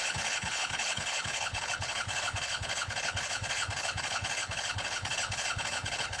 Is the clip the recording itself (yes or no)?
no